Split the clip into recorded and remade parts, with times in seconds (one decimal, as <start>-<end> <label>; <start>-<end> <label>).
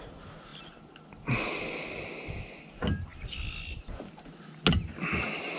0.0-5.6 recorded